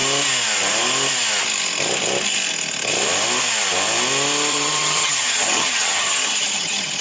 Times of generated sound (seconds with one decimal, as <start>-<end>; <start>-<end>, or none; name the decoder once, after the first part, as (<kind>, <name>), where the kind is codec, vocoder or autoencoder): 4.5-7.0 (vocoder, HiFi-GAN)